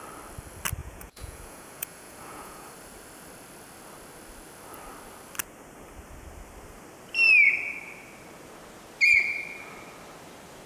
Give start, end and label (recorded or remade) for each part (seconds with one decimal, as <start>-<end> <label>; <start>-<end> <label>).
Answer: 0.0-0.8 recorded; 0.8-2.7 remade; 2.7-10.7 recorded